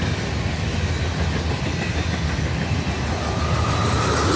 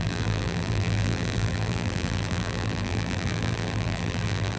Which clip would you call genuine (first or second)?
first